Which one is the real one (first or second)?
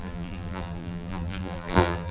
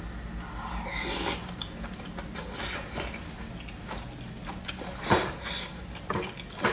second